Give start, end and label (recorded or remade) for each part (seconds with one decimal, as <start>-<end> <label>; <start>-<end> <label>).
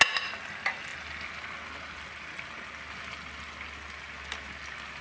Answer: 0.0-5.0 recorded